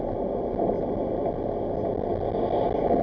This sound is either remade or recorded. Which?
recorded